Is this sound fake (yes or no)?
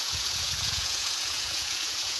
yes